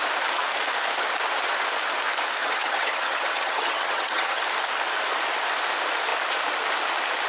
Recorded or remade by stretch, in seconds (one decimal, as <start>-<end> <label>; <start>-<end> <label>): 0.0-2.4 recorded; 2.4-4.4 remade; 4.4-7.3 recorded